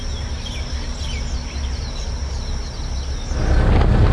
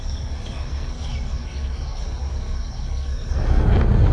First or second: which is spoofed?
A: second